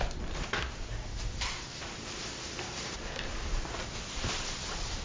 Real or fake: real